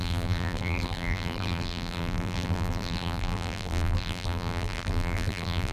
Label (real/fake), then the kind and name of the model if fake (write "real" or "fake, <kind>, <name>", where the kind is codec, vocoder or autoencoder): fake, vocoder, BigVGAN v2